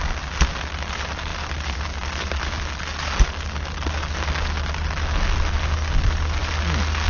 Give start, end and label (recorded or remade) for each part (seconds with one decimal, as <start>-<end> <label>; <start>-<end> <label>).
0.0-7.1 recorded